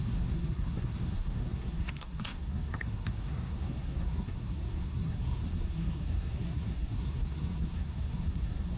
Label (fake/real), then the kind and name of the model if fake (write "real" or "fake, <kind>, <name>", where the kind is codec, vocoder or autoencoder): fake, codec, SNAC